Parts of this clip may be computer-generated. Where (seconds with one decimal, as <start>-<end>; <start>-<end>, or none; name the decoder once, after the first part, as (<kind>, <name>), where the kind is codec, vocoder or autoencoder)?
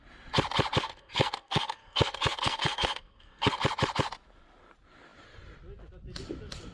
0.8-3.6 (codec, SNAC)